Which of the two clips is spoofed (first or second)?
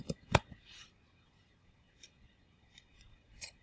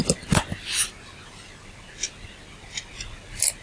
first